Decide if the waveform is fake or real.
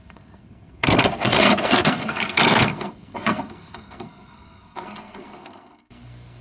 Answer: fake